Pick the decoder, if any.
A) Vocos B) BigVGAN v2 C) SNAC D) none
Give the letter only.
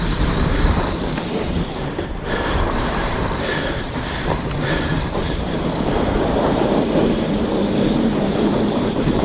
B